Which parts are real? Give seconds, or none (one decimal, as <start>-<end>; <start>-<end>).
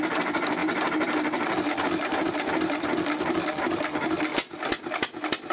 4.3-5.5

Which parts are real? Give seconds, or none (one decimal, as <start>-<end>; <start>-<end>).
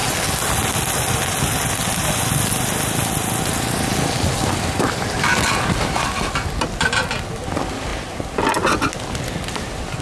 0.0-10.0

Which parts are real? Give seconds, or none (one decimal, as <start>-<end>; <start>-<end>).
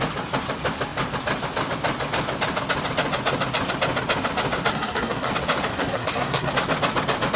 0.0-4.7; 5.3-5.7; 6.5-7.4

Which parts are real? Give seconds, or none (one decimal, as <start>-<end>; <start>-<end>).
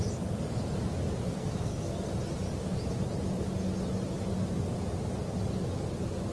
0.0-1.3; 2.1-6.3